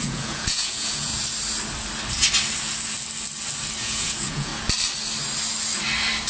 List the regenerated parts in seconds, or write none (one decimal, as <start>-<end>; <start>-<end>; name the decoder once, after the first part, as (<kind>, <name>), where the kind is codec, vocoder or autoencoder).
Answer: 0.0-1.1 (vocoder, Vocos); 3.8-4.5